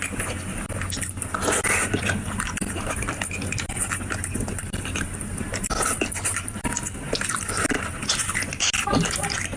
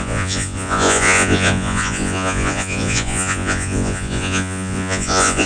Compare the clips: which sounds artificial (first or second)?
second